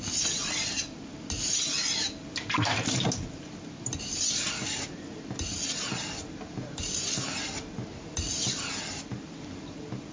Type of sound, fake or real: real